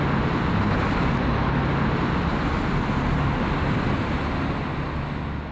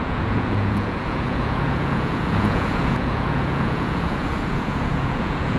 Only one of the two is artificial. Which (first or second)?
second